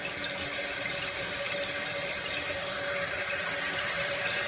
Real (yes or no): yes